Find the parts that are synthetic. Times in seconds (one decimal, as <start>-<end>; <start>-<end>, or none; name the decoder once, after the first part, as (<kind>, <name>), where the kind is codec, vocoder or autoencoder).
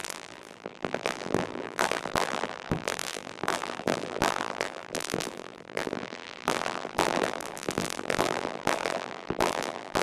0.0-10.0 (vocoder, BigVGAN v2)